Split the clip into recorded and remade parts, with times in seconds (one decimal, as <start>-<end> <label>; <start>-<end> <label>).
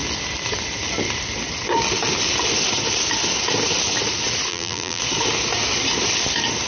0.0-4.5 recorded; 4.5-5.0 remade; 5.0-6.7 recorded